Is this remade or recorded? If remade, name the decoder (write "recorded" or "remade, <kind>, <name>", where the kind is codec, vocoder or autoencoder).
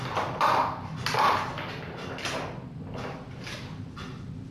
recorded